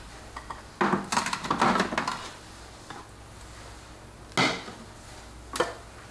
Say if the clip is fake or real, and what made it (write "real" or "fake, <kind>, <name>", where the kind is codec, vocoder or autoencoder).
real